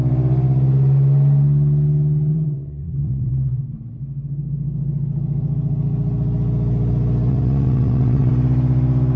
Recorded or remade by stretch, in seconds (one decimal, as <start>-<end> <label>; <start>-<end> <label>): 0.0-2.3 recorded; 2.3-3.3 remade; 3.3-7.3 recorded; 7.3-8.3 remade; 8.3-9.2 recorded